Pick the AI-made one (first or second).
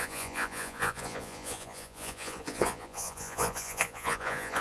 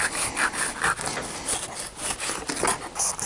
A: first